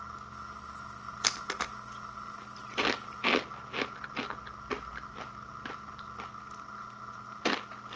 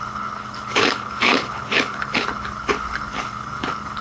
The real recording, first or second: first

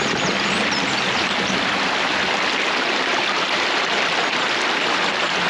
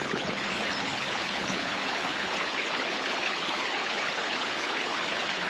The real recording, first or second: first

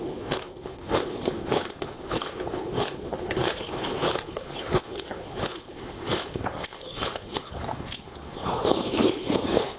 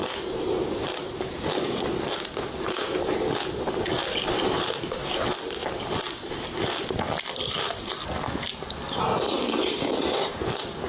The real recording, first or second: second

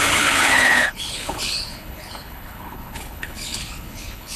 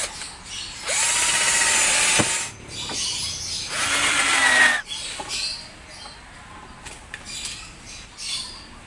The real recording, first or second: second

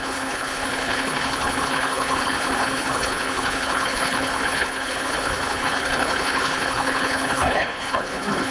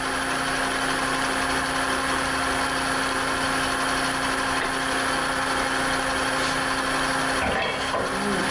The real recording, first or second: second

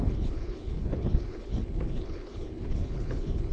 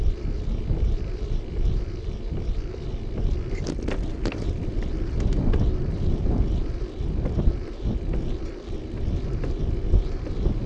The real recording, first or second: second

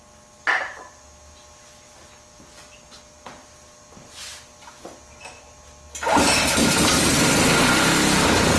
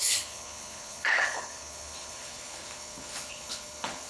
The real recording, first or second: first